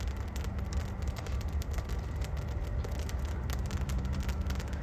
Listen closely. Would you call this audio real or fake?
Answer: real